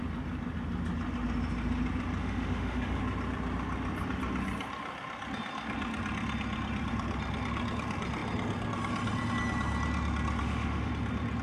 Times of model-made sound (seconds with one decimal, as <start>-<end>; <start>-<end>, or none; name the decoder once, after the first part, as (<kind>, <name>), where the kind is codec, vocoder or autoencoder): 2.2-3.0 (autoencoder, DAC-VAE); 10.4-10.9